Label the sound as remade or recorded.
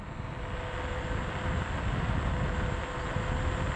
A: recorded